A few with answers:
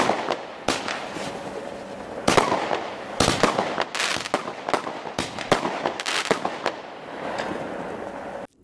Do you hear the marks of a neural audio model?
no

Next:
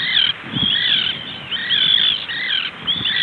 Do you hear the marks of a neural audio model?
no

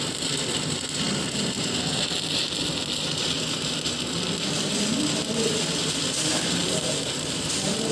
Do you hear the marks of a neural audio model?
no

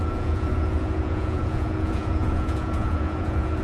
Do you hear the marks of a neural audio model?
yes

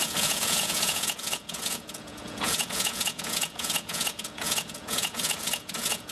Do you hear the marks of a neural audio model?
yes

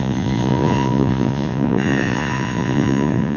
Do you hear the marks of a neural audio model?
yes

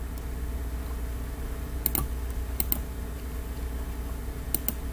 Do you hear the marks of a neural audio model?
no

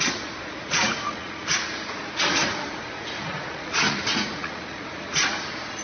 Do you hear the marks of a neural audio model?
yes